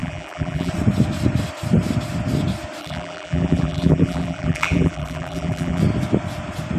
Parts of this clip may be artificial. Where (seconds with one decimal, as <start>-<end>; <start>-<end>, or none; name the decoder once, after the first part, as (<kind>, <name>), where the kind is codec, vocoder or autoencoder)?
0.0-0.7 (vocoder, BigVGAN v2); 2.8-5.8